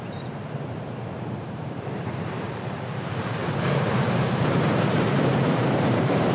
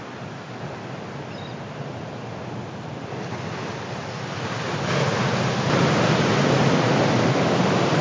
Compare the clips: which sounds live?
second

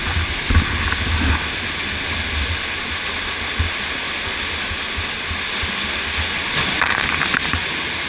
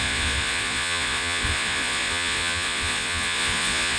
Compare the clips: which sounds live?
first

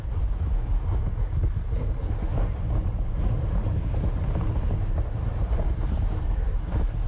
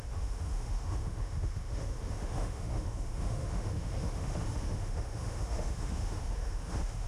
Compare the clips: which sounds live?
first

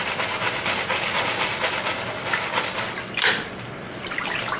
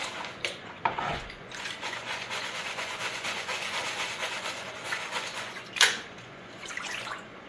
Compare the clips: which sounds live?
first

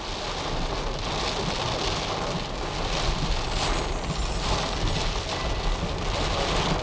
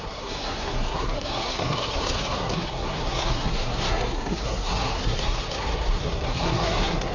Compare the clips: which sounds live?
first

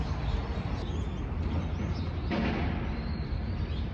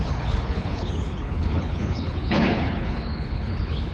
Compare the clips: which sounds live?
first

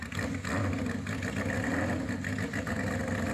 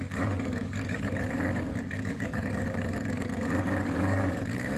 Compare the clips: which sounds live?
first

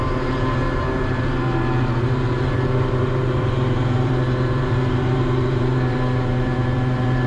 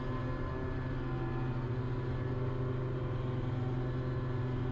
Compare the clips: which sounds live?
second